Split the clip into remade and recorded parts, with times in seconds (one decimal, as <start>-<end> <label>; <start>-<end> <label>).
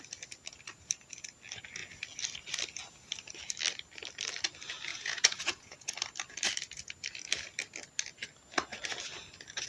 0.0-4.9 recorded; 4.9-5.9 remade; 5.9-9.7 recorded